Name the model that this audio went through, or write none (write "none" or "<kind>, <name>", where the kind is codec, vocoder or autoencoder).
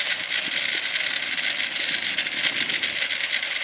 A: none